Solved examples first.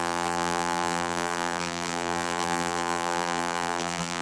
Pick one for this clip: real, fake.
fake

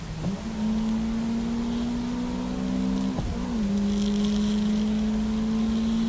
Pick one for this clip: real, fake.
real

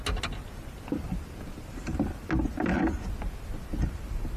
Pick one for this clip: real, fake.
real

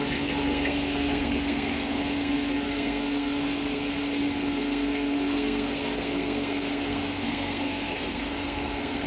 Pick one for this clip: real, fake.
fake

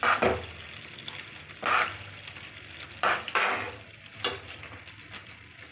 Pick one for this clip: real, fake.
real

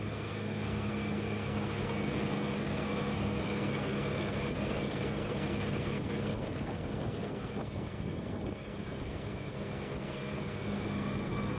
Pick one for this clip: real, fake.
fake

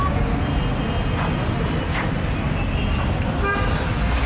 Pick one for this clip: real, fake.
real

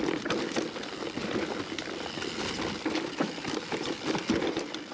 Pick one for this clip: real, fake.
real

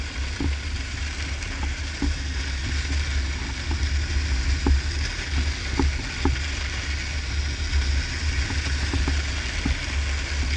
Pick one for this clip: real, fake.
real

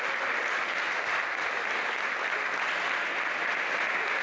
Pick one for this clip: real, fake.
real